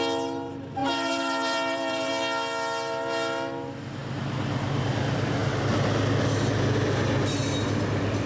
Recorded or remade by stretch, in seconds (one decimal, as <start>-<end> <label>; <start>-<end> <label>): 0.0-0.8 recorded; 0.8-2.1 remade; 2.1-8.3 recorded